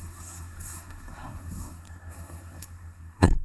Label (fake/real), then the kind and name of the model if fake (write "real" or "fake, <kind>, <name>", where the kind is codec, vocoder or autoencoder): fake, codec, SNAC